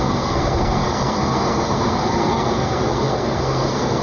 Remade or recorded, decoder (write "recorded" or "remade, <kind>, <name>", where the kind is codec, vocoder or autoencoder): remade, codec, SNAC